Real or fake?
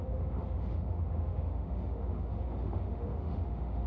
fake